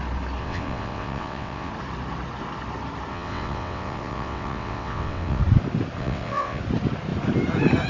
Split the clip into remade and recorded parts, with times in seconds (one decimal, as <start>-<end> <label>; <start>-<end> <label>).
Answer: 0.0-0.4 recorded; 0.4-1.7 remade; 1.7-3.1 recorded; 3.1-5.4 remade; 5.4-6.0 recorded; 6.0-6.6 remade; 6.6-7.9 recorded

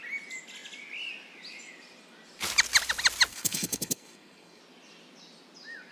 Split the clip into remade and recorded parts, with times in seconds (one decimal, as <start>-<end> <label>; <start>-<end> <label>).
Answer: 0.0-3.3 recorded; 3.3-4.6 remade; 4.6-5.9 recorded

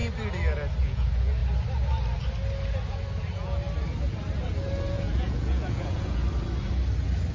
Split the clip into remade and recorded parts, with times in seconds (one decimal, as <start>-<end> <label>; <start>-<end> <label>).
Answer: 0.0-0.8 recorded; 0.8-1.4 remade; 1.4-4.9 recorded; 4.9-6.2 remade; 6.2-7.3 recorded